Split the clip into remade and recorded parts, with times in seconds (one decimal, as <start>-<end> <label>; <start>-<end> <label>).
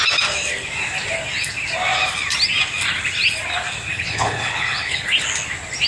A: 0.0-3.9 recorded; 3.9-5.0 remade; 5.0-5.9 recorded